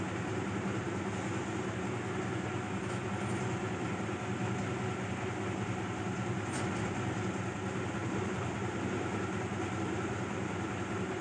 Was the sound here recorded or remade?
recorded